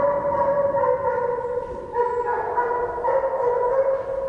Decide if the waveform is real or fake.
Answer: real